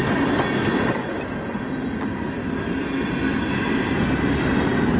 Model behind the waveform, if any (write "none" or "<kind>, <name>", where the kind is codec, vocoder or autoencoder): none